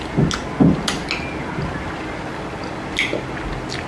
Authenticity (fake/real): real